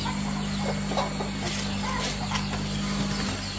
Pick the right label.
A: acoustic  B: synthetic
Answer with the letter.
A